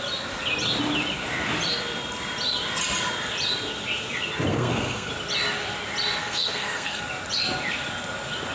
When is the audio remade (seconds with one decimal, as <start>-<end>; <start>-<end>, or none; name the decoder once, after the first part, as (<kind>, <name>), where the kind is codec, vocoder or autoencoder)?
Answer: 4.5-5.1 (codec, SNAC); 6.2-7.0